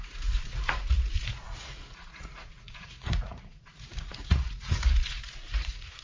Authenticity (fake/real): fake